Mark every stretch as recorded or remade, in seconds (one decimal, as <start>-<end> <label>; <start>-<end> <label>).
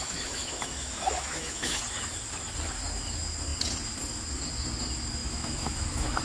0.0-1.8 remade; 1.8-5.2 recorded; 5.2-6.2 remade